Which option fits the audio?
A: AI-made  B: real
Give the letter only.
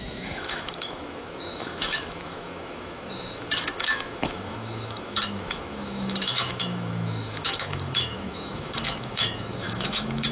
A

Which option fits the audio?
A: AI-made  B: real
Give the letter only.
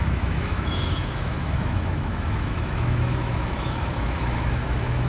A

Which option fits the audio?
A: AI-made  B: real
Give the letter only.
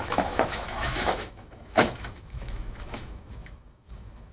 A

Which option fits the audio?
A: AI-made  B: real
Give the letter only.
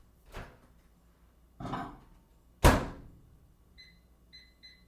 B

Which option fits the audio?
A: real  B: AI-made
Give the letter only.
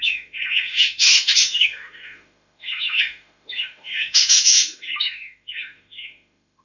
B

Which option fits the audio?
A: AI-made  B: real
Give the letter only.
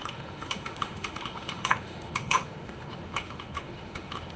A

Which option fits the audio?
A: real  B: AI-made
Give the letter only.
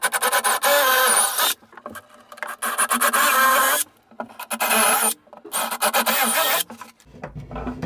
A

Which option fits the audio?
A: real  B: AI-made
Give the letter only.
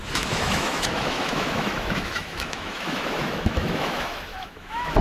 B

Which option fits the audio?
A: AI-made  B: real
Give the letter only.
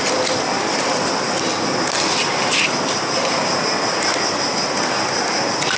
B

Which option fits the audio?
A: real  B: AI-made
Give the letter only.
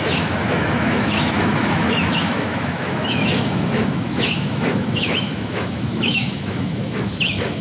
B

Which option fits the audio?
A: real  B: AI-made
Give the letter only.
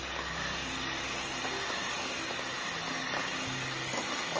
A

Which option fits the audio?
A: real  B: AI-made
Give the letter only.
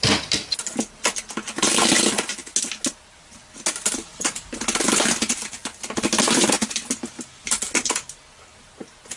A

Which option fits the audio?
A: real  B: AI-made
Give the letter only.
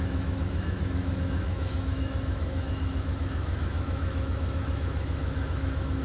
B